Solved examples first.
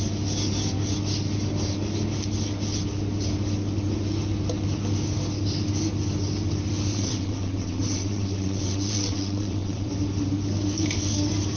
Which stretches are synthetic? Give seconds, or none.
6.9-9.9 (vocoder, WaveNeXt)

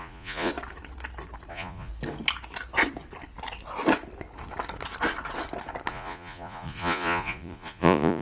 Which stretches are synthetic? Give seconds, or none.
0.0-0.5 (vocoder, Vocos); 1.5-1.9; 5.9-8.2

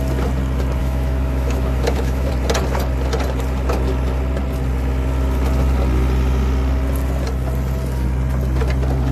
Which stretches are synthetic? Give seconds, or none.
0.8-2.3 (autoencoder, DAC-VAE)

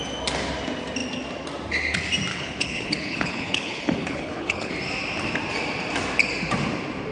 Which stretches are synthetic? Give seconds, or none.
2.3-4.7 (codec, HILCodec)